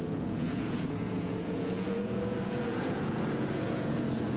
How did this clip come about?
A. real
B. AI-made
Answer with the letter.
B